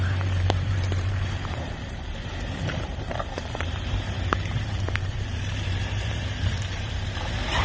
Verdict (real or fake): fake